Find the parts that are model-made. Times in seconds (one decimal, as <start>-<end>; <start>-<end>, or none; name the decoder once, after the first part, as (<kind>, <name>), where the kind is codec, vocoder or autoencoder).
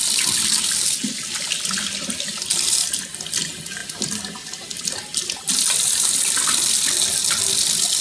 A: none